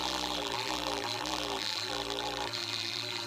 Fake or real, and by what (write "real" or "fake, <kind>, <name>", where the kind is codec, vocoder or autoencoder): fake, vocoder, BigVGAN v2